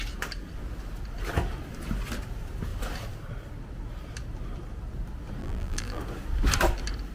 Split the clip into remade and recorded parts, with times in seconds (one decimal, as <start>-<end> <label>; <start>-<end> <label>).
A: 0.0-5.4 recorded; 5.4-6.0 remade; 6.0-7.1 recorded